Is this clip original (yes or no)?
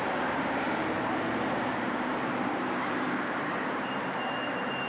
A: no